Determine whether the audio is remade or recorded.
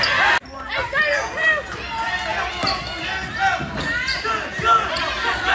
recorded